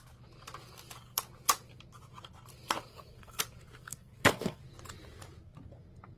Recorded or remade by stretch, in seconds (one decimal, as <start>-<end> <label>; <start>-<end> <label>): 0.0-2.9 recorded; 2.9-3.4 remade; 3.4-3.8 recorded; 3.8-4.6 remade; 4.6-6.2 recorded